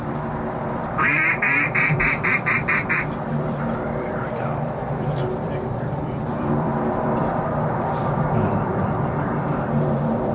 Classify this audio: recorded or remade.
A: remade